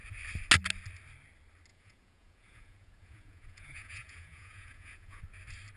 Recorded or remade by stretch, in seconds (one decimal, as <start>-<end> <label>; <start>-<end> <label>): 0.0-1.7 recorded; 1.7-5.2 remade; 5.2-5.8 recorded